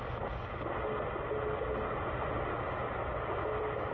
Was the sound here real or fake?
real